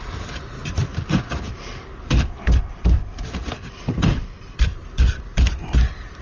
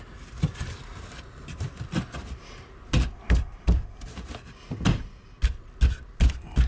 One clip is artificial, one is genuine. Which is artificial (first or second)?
first